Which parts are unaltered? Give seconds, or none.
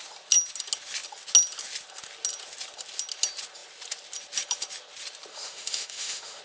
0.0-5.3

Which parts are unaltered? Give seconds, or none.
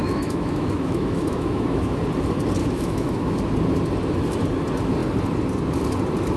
2.0-2.6; 3.4-6.4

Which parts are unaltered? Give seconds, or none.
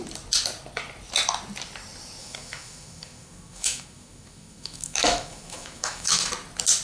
0.0-2.2; 6.3-6.8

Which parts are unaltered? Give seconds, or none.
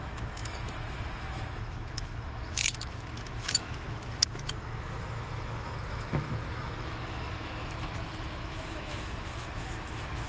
none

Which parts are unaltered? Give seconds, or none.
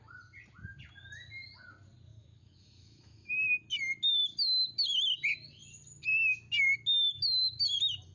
0.0-2.1; 3.8-8.1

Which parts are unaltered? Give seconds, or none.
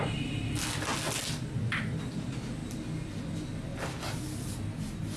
0.0-5.2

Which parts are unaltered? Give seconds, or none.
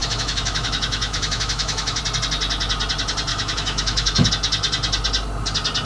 2.0-3.3; 4.3-5.9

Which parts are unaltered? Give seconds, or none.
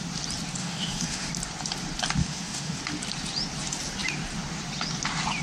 0.0-0.6; 1.3-2.2; 2.8-5.4